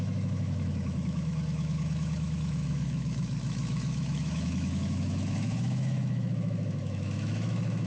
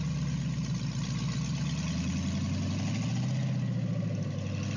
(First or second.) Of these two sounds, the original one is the second